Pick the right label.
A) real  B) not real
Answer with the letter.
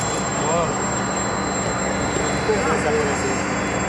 A